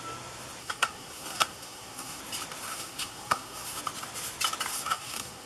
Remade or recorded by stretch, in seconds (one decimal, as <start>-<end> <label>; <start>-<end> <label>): 0.0-0.6 recorded; 0.6-2.2 remade; 2.2-2.7 recorded; 2.7-3.8 remade; 3.8-4.7 recorded; 4.7-5.5 remade